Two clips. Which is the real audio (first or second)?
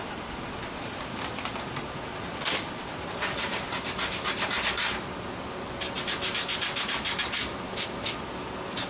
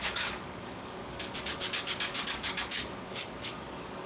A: first